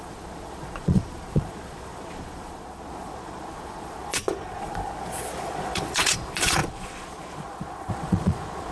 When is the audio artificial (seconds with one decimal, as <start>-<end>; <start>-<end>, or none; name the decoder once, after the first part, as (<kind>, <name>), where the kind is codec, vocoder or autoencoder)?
0.0-8.7 (vocoder, Vocos)